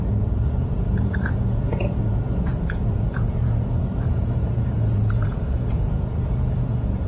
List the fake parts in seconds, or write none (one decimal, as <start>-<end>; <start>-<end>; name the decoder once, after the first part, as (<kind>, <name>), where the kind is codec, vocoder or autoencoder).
0.0-7.1 (vocoder, Vocos)